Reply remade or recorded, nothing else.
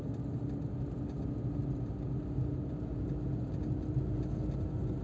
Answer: recorded